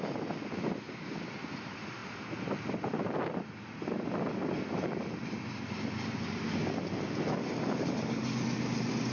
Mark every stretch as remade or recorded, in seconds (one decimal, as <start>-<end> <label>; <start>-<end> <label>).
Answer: 0.0-9.1 recorded